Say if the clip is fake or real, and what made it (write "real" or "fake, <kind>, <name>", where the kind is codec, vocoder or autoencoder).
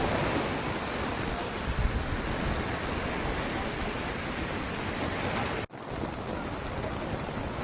real